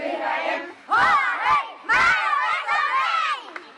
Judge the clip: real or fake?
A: real